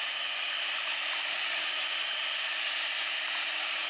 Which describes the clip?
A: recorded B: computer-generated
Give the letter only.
A